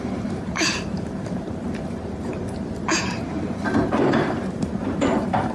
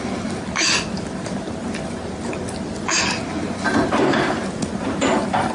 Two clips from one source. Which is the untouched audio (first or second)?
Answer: second